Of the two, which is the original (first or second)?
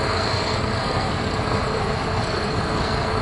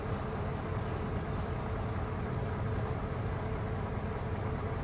second